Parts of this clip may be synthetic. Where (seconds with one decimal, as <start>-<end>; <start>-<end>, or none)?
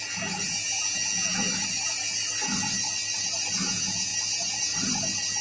1.3-3.5; 4.1-5.4